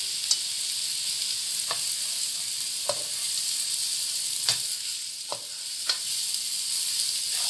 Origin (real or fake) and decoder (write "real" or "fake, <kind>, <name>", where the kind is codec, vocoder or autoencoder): real